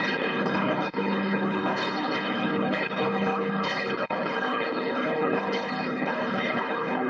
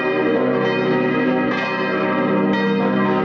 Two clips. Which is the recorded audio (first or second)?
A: second